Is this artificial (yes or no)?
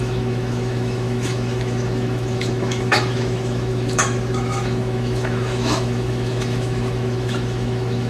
yes